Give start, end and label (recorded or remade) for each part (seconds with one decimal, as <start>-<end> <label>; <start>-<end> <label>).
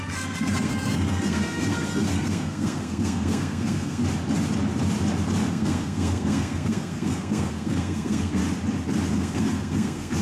0.0-4.0 remade; 4.0-5.5 recorded; 5.5-8.4 remade; 8.4-9.1 recorded; 9.1-10.2 remade